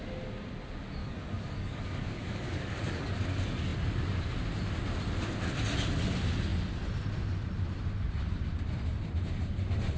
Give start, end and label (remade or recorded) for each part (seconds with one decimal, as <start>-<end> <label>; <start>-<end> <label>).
0.0-1.0 recorded; 1.0-3.2 remade; 3.2-10.0 recorded